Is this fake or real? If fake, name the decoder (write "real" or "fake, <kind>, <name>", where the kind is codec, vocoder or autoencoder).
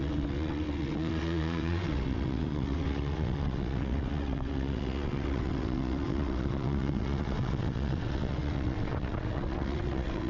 fake, vocoder, WaveNeXt